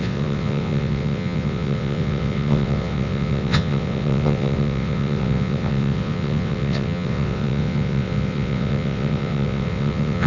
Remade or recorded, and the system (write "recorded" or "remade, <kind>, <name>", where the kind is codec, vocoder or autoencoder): remade, vocoder, WaveNeXt